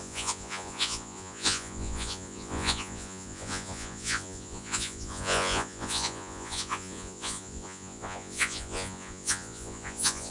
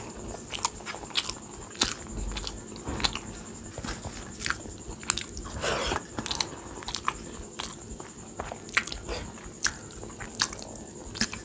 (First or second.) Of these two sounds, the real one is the second